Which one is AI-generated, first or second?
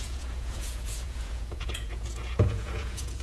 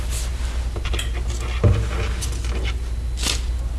first